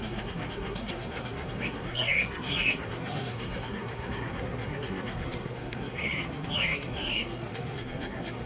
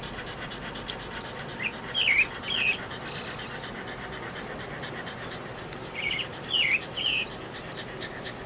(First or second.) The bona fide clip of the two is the second